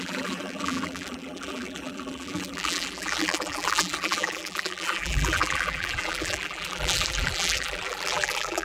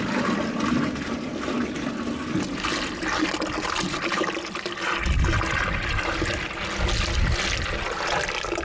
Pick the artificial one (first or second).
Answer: first